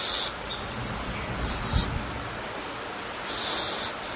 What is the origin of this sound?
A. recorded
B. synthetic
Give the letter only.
A